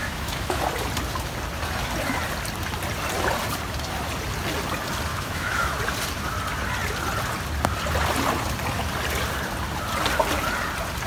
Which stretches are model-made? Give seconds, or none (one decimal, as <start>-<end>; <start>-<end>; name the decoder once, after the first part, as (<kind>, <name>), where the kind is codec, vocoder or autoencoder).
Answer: 0.0-0.6 (autoencoder, DAC-VAE); 5.1-5.8